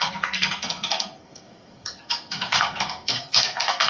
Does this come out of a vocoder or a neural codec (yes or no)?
yes